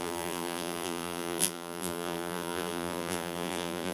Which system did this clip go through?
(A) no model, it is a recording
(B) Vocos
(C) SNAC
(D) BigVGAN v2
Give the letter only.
D